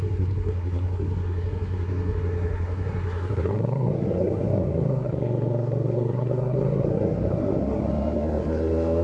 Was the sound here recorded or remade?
remade